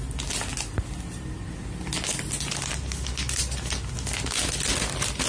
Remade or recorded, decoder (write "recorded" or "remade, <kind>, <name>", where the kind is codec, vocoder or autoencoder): recorded